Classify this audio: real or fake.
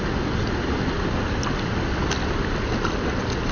real